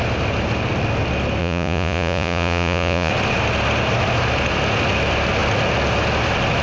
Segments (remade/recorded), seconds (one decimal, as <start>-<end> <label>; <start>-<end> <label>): 0.0-1.4 recorded; 1.4-3.1 remade; 3.1-6.6 recorded